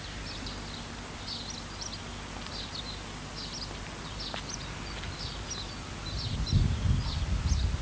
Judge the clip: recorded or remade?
recorded